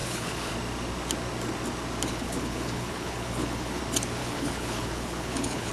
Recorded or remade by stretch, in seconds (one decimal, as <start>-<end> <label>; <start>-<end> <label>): 0.0-0.5 remade; 0.5-2.1 recorded; 2.1-3.8 remade; 3.8-4.2 recorded; 4.2-5.7 remade